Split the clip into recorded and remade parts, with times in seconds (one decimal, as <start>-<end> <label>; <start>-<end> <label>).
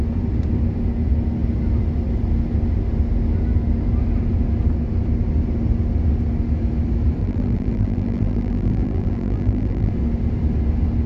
0.0-7.2 recorded; 7.2-9.9 remade; 9.9-11.1 recorded